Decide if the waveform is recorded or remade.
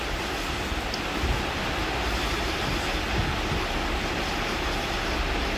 recorded